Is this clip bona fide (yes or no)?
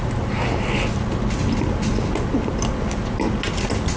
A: yes